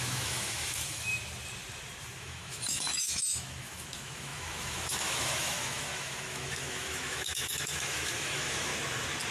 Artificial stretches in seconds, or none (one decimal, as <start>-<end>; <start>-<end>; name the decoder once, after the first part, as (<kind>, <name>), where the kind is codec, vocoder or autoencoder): 0.0-1.1 (autoencoder, DAC-VAE); 2.2-8.7